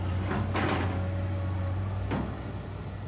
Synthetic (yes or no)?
no